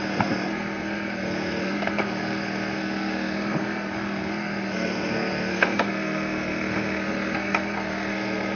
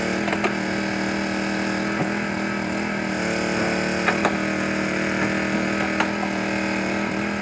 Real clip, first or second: second